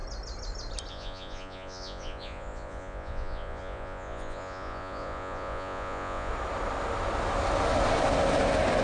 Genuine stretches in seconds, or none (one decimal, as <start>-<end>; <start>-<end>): 0.0-0.9; 6.3-8.8